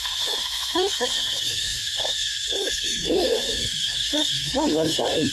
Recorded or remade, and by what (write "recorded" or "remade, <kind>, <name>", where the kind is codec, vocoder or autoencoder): remade, codec, SNAC